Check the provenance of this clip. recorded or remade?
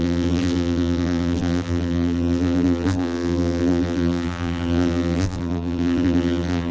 remade